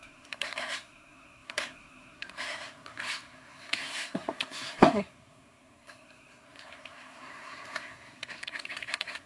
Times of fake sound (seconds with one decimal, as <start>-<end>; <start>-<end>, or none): 0.0-9.3